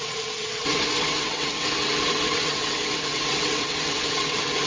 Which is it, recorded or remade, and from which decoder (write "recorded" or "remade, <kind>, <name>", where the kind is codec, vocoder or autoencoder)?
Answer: remade, vocoder, WaveNeXt